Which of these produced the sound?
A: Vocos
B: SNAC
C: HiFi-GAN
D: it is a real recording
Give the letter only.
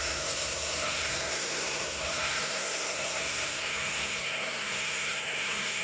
B